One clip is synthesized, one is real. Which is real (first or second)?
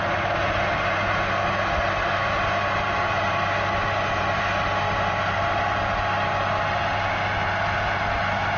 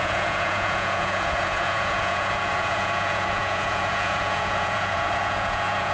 first